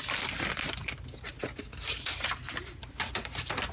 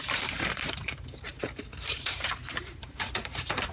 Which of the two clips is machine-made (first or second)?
second